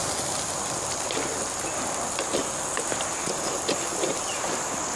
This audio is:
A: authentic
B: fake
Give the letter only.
A